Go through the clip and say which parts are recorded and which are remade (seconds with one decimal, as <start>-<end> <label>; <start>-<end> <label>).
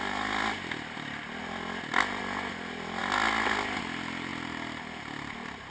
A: 0.0-5.7 recorded